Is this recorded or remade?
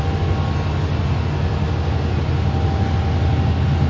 recorded